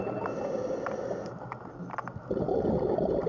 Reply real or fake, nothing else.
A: real